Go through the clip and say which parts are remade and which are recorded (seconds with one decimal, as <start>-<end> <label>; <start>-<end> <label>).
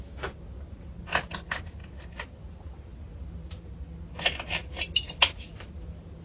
0.0-6.2 recorded